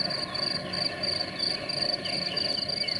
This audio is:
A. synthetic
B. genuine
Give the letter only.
B